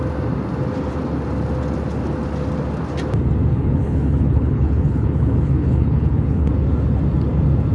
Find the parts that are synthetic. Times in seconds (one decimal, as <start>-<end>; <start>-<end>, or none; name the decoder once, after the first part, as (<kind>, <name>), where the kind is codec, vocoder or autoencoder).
3.5-6.5 (codec, HILCodec)